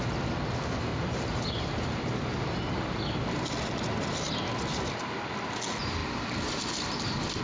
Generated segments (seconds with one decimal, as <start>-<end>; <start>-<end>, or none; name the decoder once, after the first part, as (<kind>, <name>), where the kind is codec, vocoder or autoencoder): 0.9-3.4 (vocoder, BigVGAN v2)